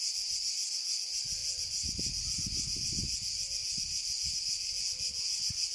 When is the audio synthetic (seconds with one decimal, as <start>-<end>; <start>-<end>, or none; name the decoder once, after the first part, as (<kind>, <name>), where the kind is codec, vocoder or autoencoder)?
none